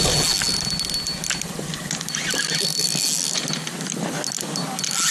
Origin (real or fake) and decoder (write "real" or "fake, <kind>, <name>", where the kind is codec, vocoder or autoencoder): real